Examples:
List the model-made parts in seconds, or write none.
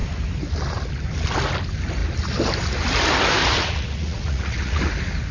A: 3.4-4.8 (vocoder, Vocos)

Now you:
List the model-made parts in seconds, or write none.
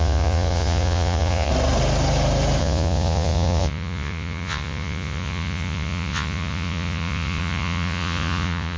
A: 0.0-1.5 (vocoder, Vocos); 2.6-8.8